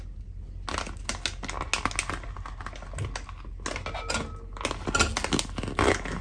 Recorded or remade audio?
recorded